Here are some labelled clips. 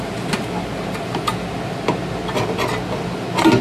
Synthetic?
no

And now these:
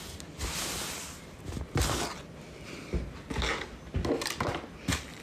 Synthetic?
no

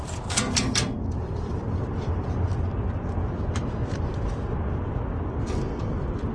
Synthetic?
no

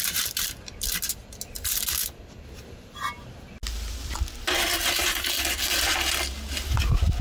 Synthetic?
no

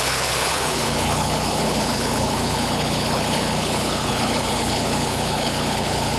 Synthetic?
yes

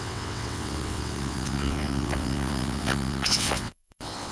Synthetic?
yes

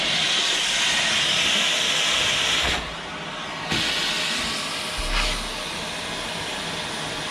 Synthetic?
no